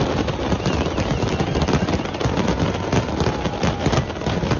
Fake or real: real